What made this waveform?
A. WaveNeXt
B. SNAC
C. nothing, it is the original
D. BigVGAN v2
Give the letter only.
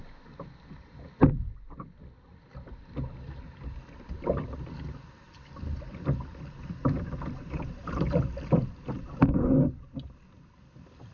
C